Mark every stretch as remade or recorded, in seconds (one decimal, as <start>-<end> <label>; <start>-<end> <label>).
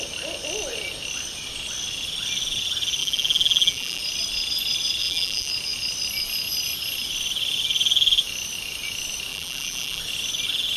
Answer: 0.0-3.0 recorded; 3.0-4.0 remade; 4.0-5.0 recorded; 5.0-5.5 remade; 5.5-9.3 recorded; 9.3-10.0 remade; 10.0-10.8 recorded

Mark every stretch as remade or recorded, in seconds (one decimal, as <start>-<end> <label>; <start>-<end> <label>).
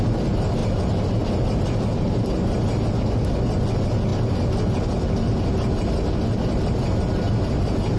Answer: 0.0-8.0 recorded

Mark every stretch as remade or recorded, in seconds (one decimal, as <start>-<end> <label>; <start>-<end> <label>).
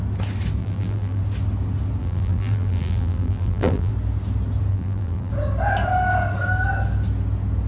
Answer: 0.0-0.6 recorded; 0.6-1.2 remade; 1.2-2.0 recorded; 2.0-3.9 remade; 3.9-4.7 recorded; 4.7-5.3 remade; 5.3-7.7 recorded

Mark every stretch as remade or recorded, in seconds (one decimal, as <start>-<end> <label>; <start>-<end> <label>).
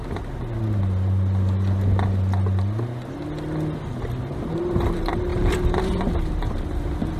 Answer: 0.0-4.3 recorded; 4.3-5.3 remade; 5.3-5.8 recorded; 5.8-7.2 remade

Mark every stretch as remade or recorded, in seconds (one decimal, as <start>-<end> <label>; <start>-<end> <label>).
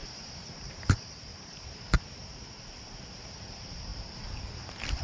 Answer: 0.0-5.0 remade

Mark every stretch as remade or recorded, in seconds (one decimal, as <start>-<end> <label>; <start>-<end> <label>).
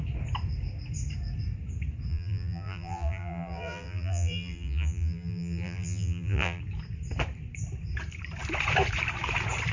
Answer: 0.0-2.1 recorded; 2.1-6.6 remade; 6.6-9.7 recorded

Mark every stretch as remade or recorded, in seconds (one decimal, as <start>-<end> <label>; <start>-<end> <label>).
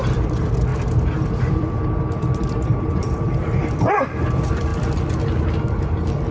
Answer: 0.0-0.7 remade; 0.7-1.5 recorded; 1.5-4.7 remade; 4.7-6.3 recorded